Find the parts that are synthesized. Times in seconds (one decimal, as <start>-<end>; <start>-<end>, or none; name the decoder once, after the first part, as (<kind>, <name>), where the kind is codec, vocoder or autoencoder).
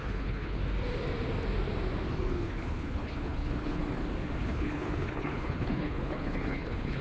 0.0-0.6 (codec, HILCodec); 2.3-3.8; 4.4-7.0